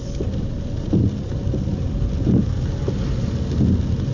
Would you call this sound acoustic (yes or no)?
yes